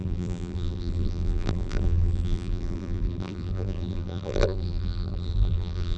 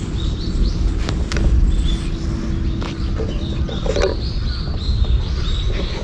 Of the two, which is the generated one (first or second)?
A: first